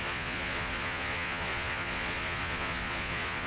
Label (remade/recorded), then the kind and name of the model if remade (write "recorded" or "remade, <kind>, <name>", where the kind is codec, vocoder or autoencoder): remade, vocoder, Vocos